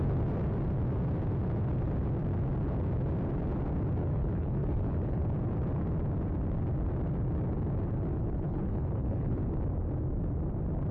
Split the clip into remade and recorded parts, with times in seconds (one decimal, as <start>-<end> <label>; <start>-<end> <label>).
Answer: 0.0-4.0 recorded; 4.0-5.2 remade; 5.2-8.1 recorded; 8.1-9.4 remade; 9.4-10.9 recorded